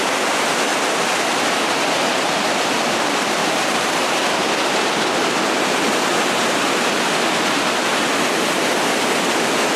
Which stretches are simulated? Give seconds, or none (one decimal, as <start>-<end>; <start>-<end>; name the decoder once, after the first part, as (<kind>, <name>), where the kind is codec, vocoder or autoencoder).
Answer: 0.7-5.3 (vocoder, BigVGAN v2)